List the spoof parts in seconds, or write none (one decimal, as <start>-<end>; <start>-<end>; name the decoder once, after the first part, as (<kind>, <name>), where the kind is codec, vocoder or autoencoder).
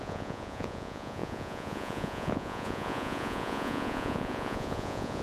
0.0-5.2 (vocoder, Vocos)